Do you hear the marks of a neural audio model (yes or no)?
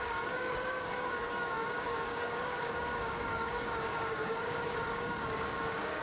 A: yes